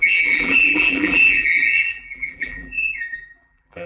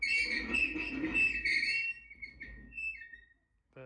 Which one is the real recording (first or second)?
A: second